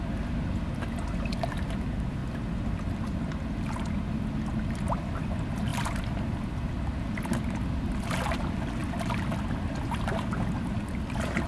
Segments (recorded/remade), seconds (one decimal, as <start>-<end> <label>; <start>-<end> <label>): 0.0-11.5 recorded